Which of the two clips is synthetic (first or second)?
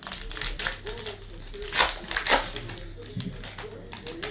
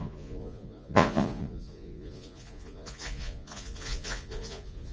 second